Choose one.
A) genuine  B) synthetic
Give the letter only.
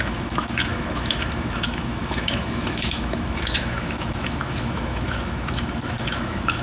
B